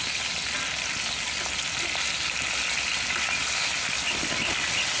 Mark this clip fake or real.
real